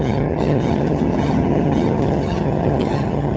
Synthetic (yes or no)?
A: yes